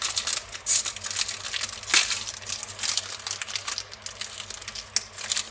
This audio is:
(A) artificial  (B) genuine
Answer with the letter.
B